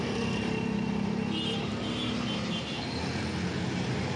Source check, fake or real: real